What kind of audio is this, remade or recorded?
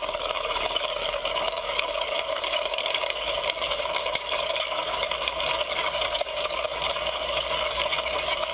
remade